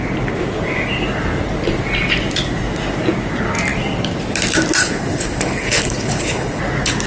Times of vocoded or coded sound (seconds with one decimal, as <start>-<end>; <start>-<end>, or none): 4.8-6.6